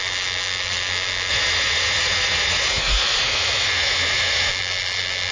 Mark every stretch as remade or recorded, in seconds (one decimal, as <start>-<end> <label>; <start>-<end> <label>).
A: 0.0-1.3 recorded; 1.3-4.5 remade; 4.5-5.3 recorded

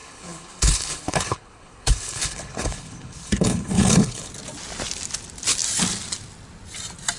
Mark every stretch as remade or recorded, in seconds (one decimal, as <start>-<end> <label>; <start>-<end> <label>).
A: 0.0-4.3 remade; 4.3-7.2 recorded

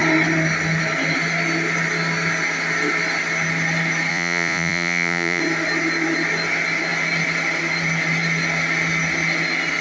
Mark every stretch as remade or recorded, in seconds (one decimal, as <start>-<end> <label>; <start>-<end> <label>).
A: 0.0-4.1 recorded; 4.1-5.4 remade; 5.4-9.8 recorded

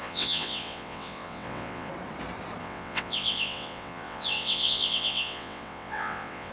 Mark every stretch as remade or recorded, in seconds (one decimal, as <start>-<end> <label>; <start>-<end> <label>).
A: 0.0-1.9 remade; 1.9-2.6 recorded; 2.6-6.5 remade